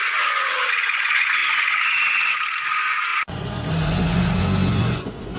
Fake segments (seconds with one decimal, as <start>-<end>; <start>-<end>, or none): 0.0-1.4; 2.1-5.4